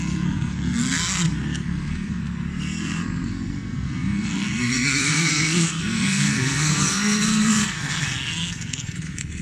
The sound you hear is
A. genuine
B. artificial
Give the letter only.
B